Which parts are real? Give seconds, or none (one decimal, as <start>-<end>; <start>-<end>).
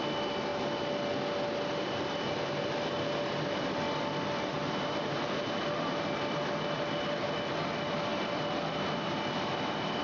0.0-10.0